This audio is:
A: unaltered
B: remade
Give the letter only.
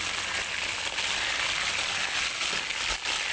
A